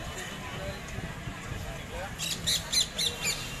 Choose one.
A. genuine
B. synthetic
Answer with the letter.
A